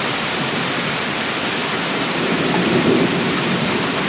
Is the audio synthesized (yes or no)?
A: no